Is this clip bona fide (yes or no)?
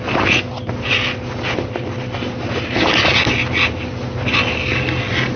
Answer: yes